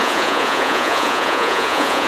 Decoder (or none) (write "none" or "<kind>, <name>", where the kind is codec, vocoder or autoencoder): vocoder, Vocos